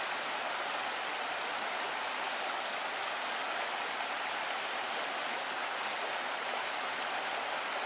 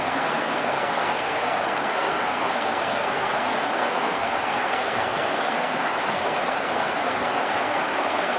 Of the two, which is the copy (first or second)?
second